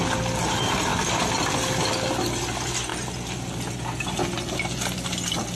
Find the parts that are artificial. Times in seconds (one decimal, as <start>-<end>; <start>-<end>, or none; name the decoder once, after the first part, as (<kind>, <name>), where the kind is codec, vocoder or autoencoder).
none